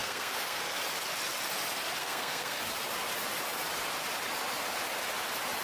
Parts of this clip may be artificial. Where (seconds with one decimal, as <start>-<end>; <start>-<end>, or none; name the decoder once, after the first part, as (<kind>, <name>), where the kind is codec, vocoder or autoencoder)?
0.0-0.6 (codec, SNAC); 2.0-2.6